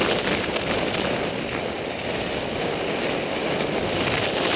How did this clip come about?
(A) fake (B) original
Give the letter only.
B